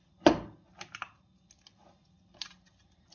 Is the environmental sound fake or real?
real